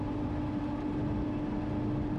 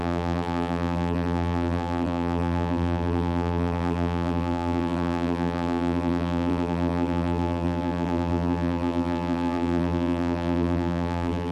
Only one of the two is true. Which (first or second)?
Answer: first